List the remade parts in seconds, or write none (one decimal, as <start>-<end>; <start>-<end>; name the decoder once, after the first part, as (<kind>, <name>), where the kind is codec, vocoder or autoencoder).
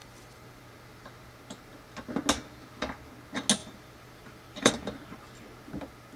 0.0-0.6 (vocoder, BigVGAN v2); 3.6-4.7